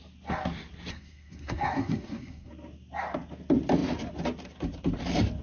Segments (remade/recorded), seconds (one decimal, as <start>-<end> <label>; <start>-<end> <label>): 0.0-0.9 recorded; 0.9-2.5 remade; 2.5-5.4 recorded